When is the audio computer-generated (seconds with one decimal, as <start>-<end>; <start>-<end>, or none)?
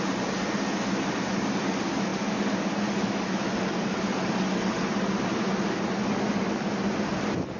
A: none